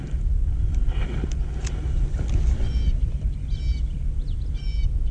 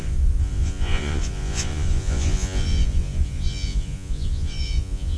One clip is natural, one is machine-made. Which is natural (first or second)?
first